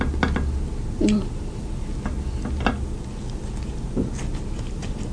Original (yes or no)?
yes